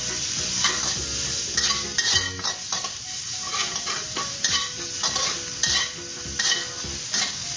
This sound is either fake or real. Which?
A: real